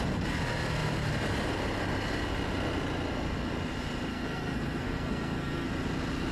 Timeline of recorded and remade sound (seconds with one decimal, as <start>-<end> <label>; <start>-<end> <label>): 0.0-4.1 recorded; 4.1-5.7 remade; 5.7-6.3 recorded